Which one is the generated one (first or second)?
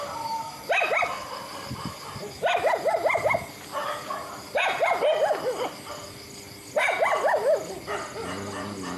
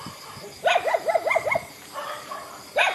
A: second